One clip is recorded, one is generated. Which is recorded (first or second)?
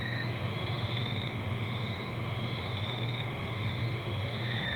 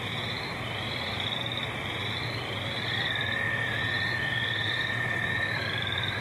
second